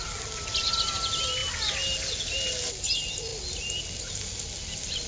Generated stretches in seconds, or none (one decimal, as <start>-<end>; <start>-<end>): none